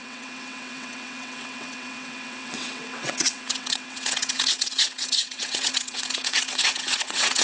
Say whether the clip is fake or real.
fake